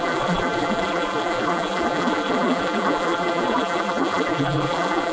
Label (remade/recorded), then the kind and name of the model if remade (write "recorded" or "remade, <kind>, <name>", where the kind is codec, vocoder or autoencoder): remade, vocoder, BigVGAN v2